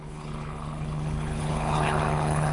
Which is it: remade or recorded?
remade